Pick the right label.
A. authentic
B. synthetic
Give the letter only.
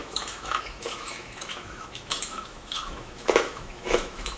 B